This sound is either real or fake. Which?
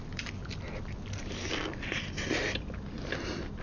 real